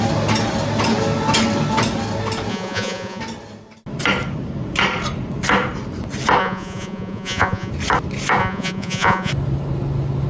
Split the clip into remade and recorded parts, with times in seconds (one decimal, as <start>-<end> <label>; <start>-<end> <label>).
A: 0.0-2.5 recorded; 2.5-3.2 remade; 3.2-6.4 recorded; 6.4-7.7 remade; 7.7-8.4 recorded; 8.4-9.3 remade; 9.3-10.3 recorded